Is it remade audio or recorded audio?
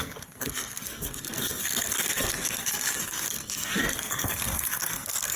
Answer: remade